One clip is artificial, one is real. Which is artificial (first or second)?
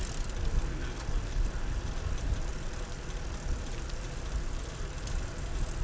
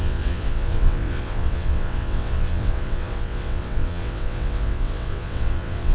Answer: second